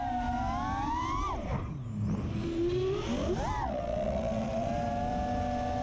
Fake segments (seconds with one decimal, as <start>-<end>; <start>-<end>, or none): 3.6-4.7